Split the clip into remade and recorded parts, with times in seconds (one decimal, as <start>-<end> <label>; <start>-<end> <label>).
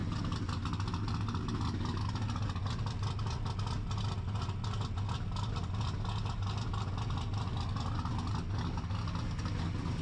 0.0-10.0 recorded